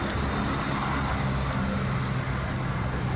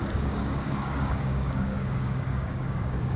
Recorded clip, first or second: first